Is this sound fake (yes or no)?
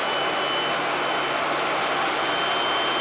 no